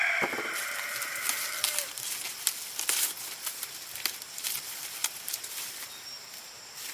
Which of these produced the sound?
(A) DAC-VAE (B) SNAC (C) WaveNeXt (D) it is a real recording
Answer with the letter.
D